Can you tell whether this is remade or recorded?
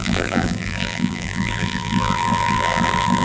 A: remade